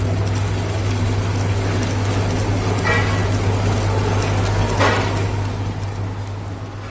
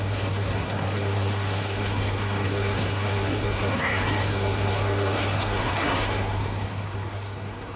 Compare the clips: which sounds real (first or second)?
first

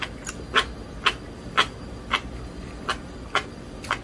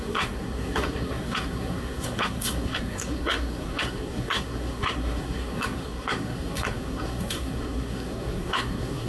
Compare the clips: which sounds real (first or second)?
first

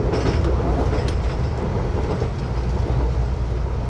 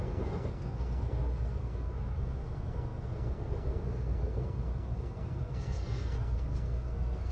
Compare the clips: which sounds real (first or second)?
first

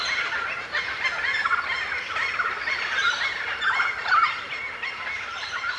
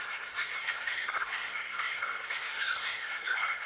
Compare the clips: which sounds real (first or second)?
first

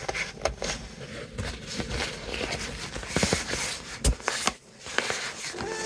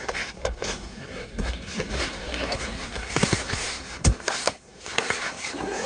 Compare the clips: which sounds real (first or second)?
first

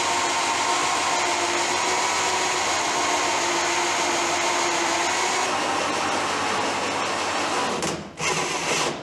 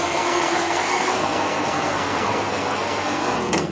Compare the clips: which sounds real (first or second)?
first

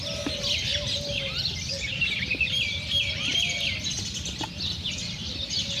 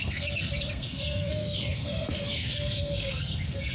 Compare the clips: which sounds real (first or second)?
first